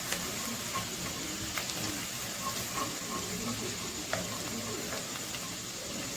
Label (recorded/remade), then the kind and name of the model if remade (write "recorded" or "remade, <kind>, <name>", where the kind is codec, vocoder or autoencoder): recorded